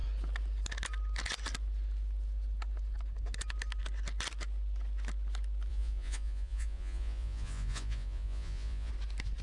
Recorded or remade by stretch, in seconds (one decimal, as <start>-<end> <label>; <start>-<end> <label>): 0.0-5.7 recorded; 5.7-8.9 remade; 8.9-9.4 recorded